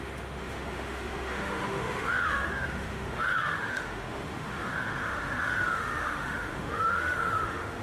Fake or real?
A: fake